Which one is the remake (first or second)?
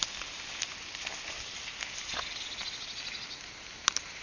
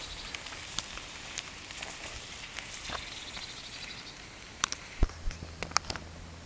second